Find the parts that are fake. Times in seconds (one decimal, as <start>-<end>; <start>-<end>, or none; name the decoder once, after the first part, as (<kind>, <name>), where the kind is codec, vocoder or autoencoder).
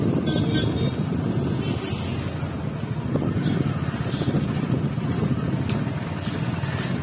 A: none